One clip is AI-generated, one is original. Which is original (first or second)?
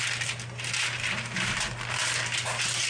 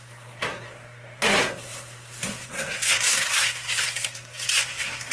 first